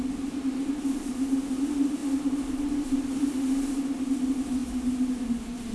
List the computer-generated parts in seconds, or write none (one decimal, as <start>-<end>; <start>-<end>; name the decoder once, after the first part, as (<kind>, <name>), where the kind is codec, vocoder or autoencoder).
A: none